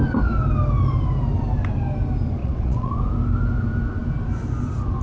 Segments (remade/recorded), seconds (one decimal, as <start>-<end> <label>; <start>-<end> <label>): 0.0-2.4 recorded; 2.4-2.9 remade; 2.9-5.0 recorded